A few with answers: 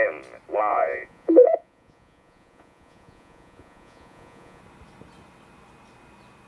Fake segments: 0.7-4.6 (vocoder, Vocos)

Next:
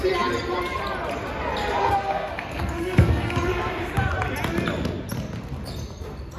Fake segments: 1.8-3.9 (codec, SNAC)